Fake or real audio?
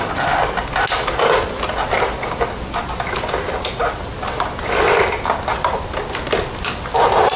real